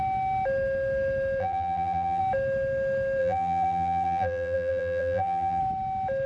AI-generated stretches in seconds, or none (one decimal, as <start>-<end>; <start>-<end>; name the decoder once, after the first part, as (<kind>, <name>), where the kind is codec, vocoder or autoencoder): 1.4-2.2 (vocoder, BigVGAN v2); 3.2-5.6